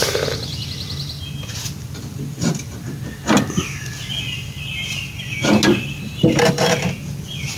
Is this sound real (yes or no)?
yes